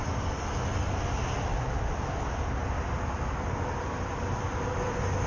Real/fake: real